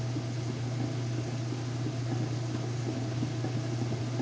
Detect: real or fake real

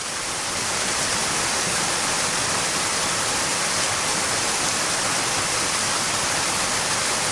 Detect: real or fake real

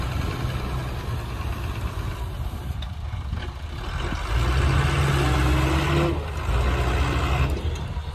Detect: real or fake real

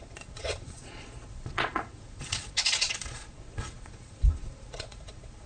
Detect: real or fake fake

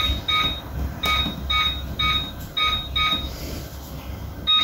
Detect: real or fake real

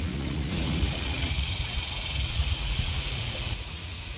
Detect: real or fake fake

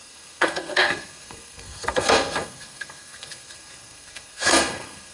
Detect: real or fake fake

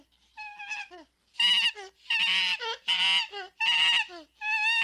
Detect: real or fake real